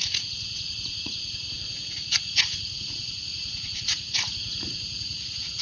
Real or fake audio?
fake